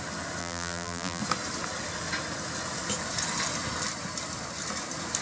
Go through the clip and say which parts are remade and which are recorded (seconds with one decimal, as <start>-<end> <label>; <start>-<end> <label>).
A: 0.0-0.4 recorded; 0.4-1.2 remade; 1.2-5.2 recorded